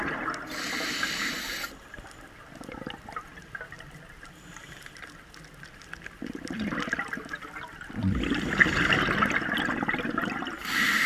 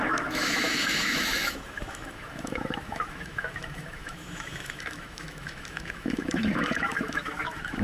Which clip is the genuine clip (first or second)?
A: first